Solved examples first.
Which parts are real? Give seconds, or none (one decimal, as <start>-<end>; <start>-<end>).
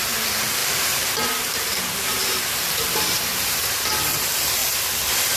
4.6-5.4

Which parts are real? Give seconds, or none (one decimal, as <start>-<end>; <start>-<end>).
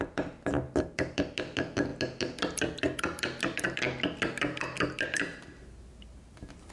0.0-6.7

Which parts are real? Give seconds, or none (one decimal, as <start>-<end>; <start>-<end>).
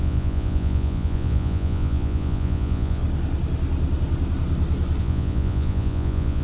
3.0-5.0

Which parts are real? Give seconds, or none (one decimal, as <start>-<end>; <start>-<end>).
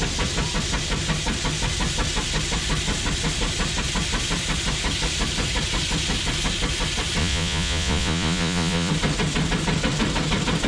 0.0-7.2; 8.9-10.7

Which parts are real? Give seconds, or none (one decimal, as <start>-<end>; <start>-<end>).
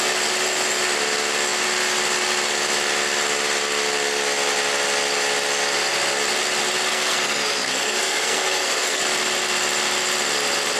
0.0-6.9; 9.0-10.8